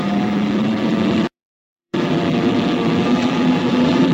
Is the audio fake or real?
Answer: fake